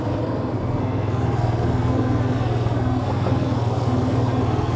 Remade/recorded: remade